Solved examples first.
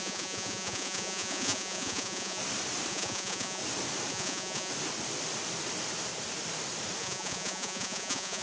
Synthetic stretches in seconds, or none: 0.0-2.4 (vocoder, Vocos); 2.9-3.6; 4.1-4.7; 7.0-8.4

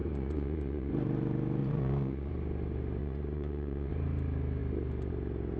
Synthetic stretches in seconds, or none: 0.0-0.9 (vocoder, Vocos); 1.6-2.3; 3.0-3.9

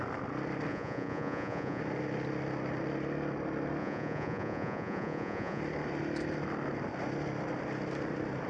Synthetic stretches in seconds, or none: 0.7-1.8 (vocoder, Vocos); 3.8-5.6

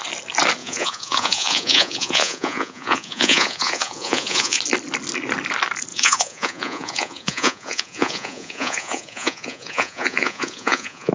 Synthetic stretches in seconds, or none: 0.6-4.6 (vocoder, Vocos); 5.9-11.1

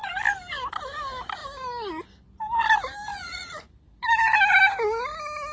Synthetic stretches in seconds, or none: 3.1-3.6 (vocoder, Vocos)

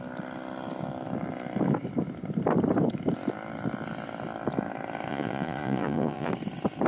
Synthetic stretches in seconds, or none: 5.1-6.3 (vocoder, Vocos)